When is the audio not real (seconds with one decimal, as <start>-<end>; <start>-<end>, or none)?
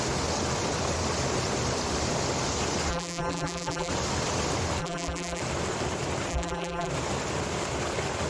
2.9-3.9; 4.8-5.4; 6.3-6.9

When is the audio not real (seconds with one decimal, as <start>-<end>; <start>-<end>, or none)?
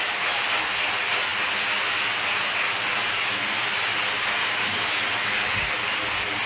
none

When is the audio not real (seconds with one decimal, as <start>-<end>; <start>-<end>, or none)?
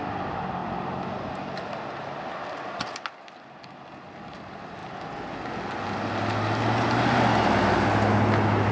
none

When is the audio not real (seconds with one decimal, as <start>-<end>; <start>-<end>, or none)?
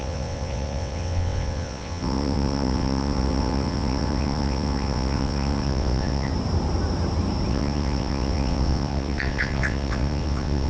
0.0-6.3; 7.5-10.7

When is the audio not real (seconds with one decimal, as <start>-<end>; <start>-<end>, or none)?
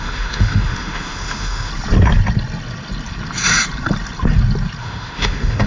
0.0-1.7; 4.8-5.7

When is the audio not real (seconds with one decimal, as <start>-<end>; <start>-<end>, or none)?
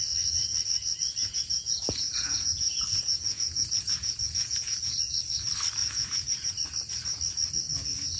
1.2-4.9; 5.8-6.5